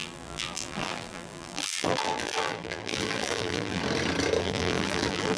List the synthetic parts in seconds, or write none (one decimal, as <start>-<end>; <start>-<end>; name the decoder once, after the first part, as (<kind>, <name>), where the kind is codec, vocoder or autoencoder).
0.0-3.8 (vocoder, BigVGAN v2); 4.4-5.4